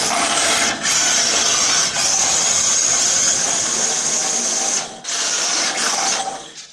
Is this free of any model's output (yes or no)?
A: yes